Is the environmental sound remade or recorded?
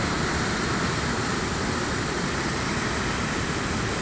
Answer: recorded